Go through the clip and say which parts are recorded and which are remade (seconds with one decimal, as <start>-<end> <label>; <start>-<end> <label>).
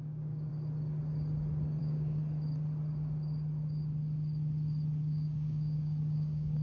0.0-0.5 remade; 0.5-1.8 recorded; 1.8-2.2 remade; 2.2-5.0 recorded; 5.0-6.6 remade